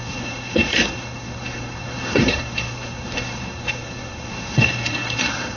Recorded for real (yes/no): no